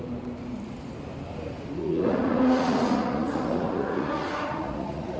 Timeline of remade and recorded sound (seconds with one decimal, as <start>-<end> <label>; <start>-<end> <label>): 0.0-1.8 recorded; 1.8-5.2 remade